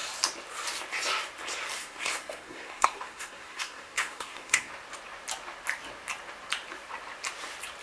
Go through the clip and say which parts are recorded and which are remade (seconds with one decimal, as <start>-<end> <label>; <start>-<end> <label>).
0.0-1.8 recorded; 1.8-4.7 remade; 4.7-7.8 recorded

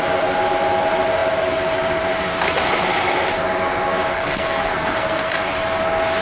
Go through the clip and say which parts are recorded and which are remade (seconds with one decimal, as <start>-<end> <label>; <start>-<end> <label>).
0.0-4.1 recorded; 4.1-5.3 remade; 5.3-6.2 recorded

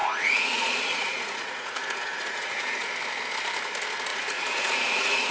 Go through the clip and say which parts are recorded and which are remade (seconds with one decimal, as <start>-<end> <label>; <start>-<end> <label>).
0.0-2.9 remade; 2.9-4.1 recorded; 4.1-5.3 remade

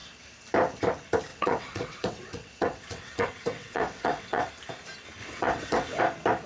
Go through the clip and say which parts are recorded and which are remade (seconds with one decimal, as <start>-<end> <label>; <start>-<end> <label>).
0.0-1.3 recorded; 1.3-4.5 remade; 4.5-5.2 recorded; 5.2-6.0 remade; 6.0-6.5 recorded

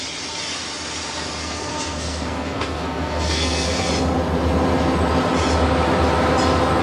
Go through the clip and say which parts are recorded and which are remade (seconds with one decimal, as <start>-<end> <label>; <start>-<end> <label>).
0.0-1.4 recorded; 1.4-3.9 remade; 3.9-6.8 recorded